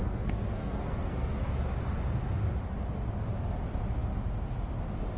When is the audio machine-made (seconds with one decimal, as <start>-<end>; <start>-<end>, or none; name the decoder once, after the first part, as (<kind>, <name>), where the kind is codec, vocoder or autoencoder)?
0.0-1.3 (codec, SNAC)